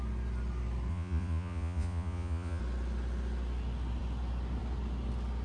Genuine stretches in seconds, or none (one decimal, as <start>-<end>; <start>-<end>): 0.0-0.9; 2.6-5.4